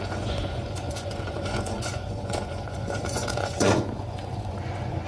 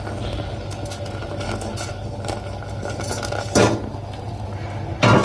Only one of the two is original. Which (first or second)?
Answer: second